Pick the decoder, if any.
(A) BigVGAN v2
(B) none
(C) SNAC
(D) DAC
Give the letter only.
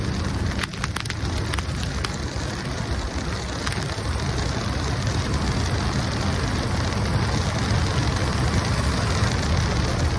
B